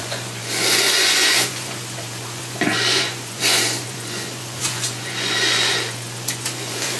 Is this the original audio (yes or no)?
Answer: no